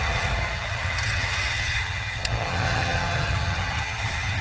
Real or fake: fake